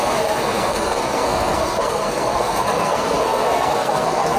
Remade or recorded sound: remade